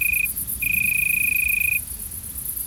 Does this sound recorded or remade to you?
recorded